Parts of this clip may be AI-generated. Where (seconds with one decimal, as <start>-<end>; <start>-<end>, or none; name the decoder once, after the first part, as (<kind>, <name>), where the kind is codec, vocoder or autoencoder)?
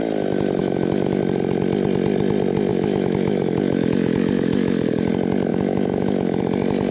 0.6-1.2 (autoencoder, DAC-VAE); 2.7-5.1; 5.5-6.4